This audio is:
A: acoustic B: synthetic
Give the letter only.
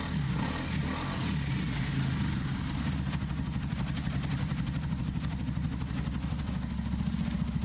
A